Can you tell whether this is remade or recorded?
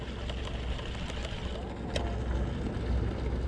recorded